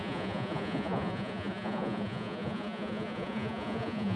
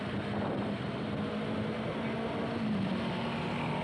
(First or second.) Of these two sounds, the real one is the second